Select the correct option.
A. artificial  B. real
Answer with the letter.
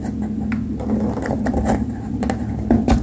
B